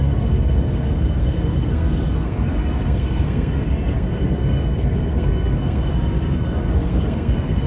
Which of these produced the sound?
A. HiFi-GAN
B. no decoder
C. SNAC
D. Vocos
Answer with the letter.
C